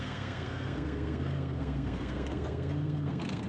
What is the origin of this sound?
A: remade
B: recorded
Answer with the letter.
A